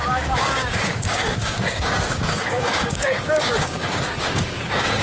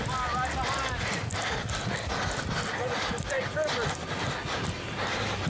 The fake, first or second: first